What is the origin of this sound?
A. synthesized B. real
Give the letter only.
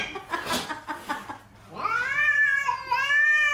B